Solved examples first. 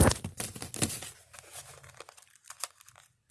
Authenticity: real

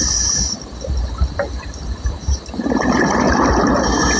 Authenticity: real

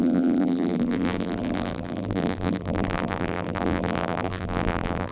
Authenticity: fake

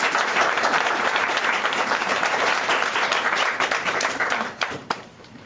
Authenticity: fake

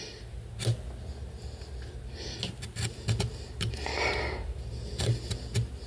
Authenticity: real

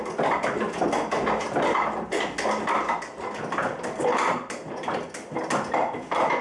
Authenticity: real